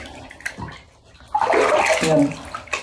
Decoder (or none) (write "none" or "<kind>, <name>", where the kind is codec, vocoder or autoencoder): none